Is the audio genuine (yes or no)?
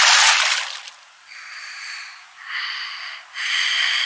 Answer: yes